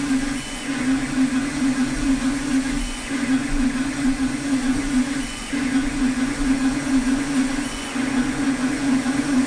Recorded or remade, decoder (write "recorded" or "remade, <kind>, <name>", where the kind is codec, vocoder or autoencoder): remade, vocoder, Vocos